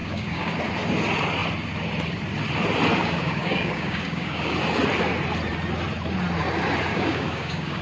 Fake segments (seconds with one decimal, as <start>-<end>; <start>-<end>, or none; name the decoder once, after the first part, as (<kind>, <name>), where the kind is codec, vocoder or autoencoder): 0.0-0.6 (codec, DAC); 3.0-4.5; 6.9-7.8